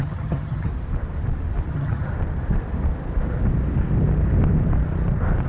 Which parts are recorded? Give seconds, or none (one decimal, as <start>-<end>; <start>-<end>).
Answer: 0.7-1.7; 2.1-5.5